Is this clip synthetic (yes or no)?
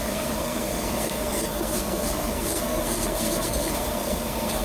yes